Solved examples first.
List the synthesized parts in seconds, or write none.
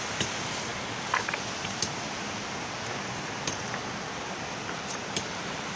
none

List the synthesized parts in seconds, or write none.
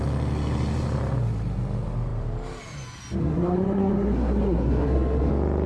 3.2-5.3 (codec, SNAC)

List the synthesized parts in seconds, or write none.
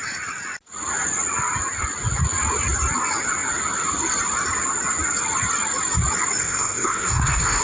6.4-7.6 (codec, SNAC)